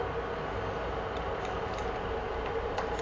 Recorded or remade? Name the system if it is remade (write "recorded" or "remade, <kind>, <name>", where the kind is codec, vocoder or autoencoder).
recorded